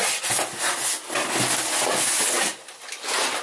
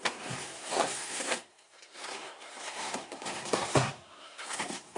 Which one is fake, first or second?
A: second